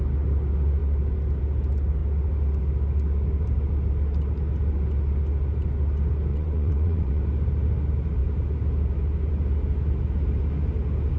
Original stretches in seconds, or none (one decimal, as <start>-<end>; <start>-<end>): 0.0-6.3; 7.2-11.2